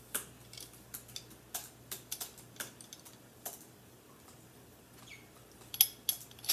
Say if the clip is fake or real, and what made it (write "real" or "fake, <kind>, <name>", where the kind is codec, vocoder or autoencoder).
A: real